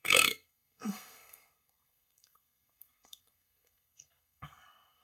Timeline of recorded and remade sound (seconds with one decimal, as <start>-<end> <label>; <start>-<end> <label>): 0.0-5.0 remade